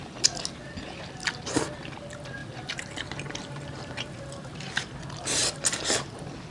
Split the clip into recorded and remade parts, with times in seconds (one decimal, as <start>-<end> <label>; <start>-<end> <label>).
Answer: 0.0-2.4 recorded; 2.4-6.1 remade; 6.1-6.5 recorded